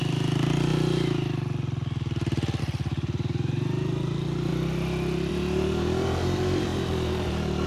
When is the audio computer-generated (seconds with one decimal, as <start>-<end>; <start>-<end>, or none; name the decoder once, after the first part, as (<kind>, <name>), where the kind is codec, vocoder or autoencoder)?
0.0-0.7 (vocoder, BigVGAN v2); 2.6-4.5; 5.3-7.7